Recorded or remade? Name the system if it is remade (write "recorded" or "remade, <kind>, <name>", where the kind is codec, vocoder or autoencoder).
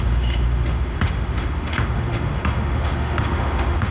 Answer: remade, autoencoder, DAC-VAE